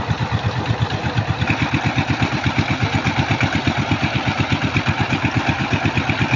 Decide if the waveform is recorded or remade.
recorded